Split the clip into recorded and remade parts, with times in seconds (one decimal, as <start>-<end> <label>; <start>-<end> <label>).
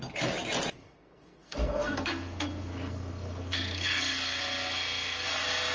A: 0.0-0.8 recorded; 0.8-3.9 remade; 3.9-5.7 recorded